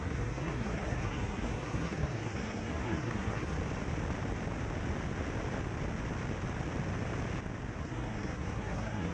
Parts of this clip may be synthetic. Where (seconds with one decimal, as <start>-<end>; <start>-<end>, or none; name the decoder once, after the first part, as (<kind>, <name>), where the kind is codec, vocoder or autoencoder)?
0.0-3.6 (codec, SNAC); 7.8-9.1